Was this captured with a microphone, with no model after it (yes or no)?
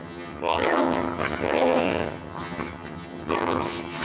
no